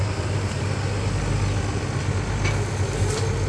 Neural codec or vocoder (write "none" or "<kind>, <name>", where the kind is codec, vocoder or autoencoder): none